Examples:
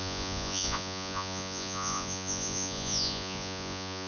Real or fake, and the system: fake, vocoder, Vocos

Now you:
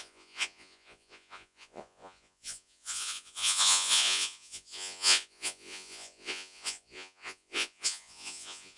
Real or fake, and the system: fake, vocoder, Vocos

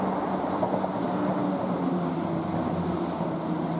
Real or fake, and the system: real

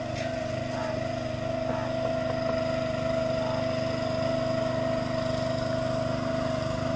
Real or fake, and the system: real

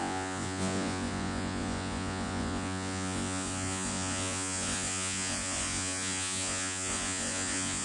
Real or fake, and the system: fake, vocoder, Vocos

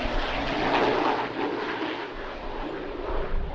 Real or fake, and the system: real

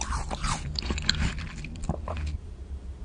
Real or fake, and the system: real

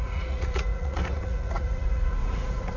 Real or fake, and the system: fake, vocoder, Vocos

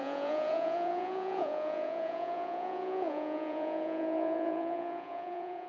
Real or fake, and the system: fake, vocoder, Vocos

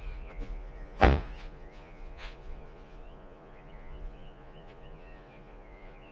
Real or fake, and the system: fake, vocoder, Vocos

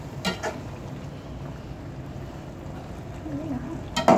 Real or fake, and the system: real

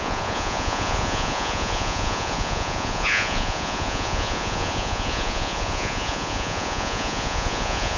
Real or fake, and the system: fake, vocoder, Vocos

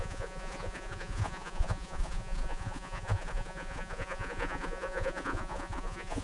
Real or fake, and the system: fake, vocoder, Vocos